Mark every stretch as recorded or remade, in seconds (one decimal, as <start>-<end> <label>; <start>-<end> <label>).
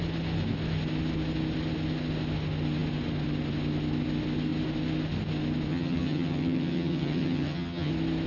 0.0-5.7 recorded; 5.7-7.9 remade; 7.9-8.3 recorded